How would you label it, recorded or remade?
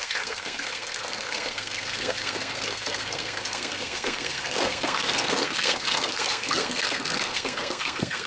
remade